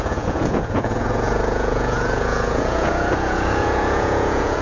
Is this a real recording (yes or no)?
no